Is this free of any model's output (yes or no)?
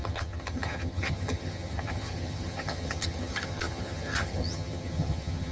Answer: no